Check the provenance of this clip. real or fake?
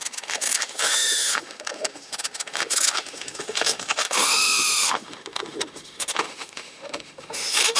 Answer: fake